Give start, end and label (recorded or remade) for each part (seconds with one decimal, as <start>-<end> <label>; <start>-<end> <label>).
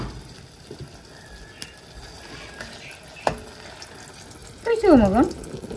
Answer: 0.0-5.8 recorded